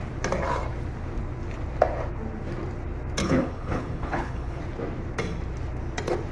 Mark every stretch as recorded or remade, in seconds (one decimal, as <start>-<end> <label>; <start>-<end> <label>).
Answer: 0.0-3.2 recorded; 3.2-4.6 remade; 4.6-6.3 recorded